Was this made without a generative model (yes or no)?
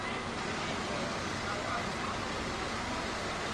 yes